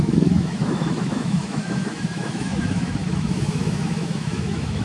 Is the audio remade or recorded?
remade